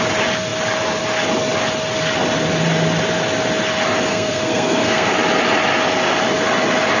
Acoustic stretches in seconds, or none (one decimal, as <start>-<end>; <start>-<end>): 0.0-4.1; 5.1-7.0